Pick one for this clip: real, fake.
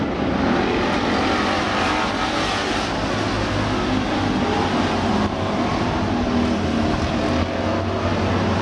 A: real